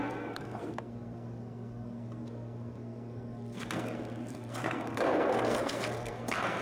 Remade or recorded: remade